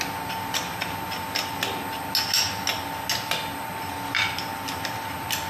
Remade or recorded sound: recorded